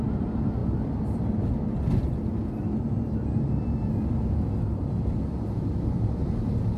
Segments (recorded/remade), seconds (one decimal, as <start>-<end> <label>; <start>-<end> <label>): 0.0-6.8 recorded